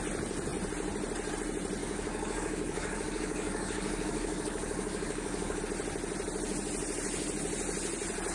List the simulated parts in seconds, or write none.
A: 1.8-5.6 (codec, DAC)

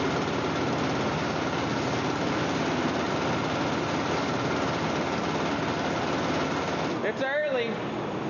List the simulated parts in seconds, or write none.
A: none

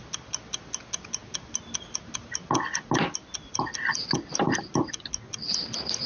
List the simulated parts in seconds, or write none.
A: none